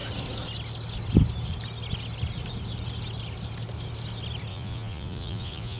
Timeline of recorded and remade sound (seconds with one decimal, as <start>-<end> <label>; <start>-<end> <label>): 0.0-4.5 recorded; 4.5-5.8 remade